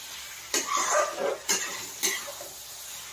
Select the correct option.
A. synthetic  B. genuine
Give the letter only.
B